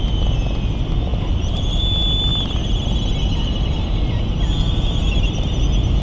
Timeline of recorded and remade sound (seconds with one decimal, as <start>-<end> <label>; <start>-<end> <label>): 0.0-1.1 recorded; 1.1-1.8 remade; 1.8-6.0 recorded